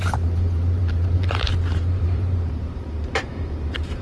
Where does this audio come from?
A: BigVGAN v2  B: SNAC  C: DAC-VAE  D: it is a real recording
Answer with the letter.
A